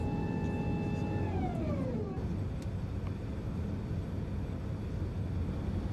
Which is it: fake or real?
real